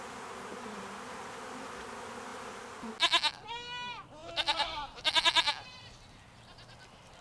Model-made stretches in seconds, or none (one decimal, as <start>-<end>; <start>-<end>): 0.5-1.3; 2.3-2.9; 4.2-6.0